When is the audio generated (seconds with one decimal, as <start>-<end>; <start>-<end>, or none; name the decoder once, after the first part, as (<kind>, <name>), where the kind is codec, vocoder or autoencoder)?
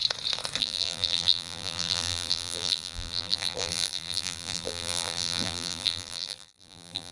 0.6-7.1 (vocoder, BigVGAN v2)